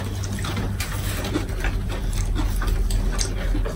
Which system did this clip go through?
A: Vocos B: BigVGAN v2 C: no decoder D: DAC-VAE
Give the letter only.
C